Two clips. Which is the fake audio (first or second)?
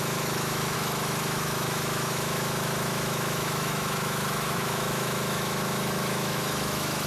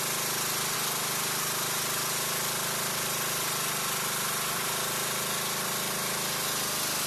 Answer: first